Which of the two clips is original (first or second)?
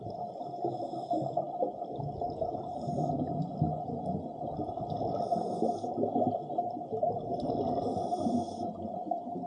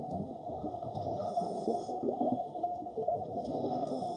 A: first